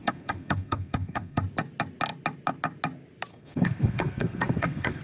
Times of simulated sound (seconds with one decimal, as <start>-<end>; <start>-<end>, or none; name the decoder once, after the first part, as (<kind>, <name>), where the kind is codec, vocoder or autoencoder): 0.0-1.4 (codec, SNAC); 3.3-5.0